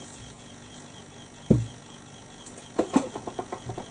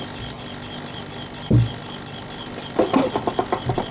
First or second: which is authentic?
second